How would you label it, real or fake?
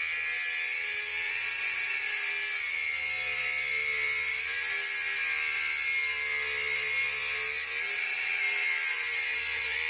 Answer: real